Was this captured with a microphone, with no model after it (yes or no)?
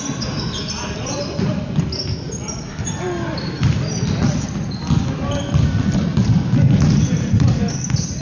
yes